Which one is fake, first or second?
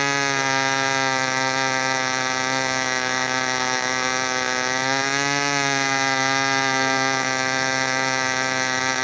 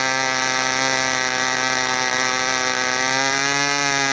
first